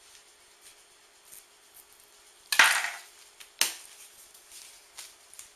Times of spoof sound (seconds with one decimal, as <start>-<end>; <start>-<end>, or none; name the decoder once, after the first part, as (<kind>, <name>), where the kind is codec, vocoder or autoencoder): none